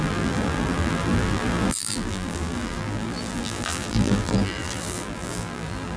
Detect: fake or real fake